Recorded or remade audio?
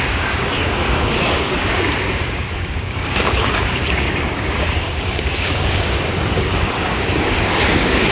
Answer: remade